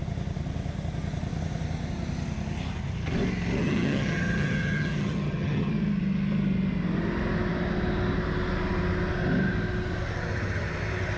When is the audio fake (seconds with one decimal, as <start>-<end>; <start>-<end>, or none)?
3.6-5.7